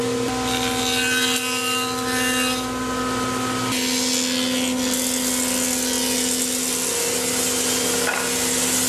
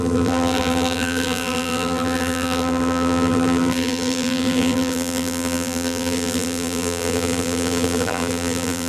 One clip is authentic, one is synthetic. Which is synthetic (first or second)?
second